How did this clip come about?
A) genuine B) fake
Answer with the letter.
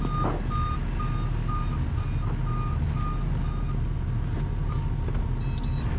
A